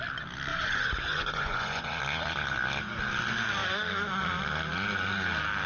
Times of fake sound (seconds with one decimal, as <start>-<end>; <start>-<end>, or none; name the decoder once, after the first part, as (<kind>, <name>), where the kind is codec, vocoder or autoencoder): 0.5-2.0 (vocoder, Vocos)